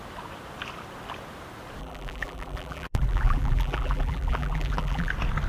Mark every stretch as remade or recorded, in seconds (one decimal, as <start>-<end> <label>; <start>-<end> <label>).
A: 0.0-1.8 recorded; 1.8-5.1 remade; 5.1-5.5 recorded